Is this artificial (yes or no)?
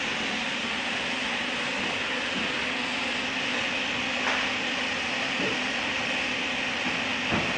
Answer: no